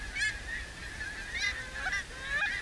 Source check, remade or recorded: recorded